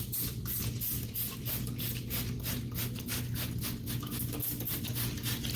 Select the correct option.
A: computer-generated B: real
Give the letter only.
B